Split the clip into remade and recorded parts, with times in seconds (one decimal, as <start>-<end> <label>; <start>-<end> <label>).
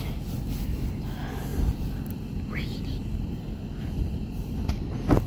0.0-5.3 remade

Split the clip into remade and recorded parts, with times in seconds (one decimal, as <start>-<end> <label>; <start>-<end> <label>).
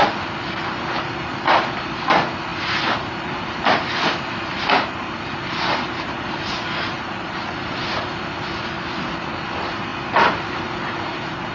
0.0-2.5 recorded; 2.5-6.5 remade; 6.5-9.9 recorded; 9.9-10.9 remade; 10.9-11.5 recorded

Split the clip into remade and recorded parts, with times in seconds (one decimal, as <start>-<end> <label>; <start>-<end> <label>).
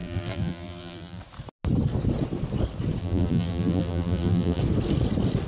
0.0-1.2 remade; 1.2-3.0 recorded; 3.0-4.6 remade; 4.6-5.5 recorded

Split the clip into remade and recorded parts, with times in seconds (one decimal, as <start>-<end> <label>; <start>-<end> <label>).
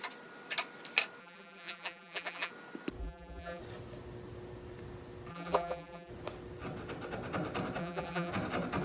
0.0-1.2 recorded; 1.2-2.5 remade; 2.5-3.0 recorded; 3.0-3.6 remade; 3.6-5.3 recorded; 5.3-6.1 remade; 6.1-7.8 recorded; 7.8-8.3 remade; 8.3-8.8 recorded